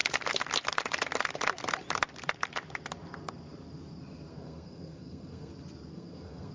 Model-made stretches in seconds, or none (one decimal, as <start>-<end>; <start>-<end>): 4.3-5.5; 5.9-6.5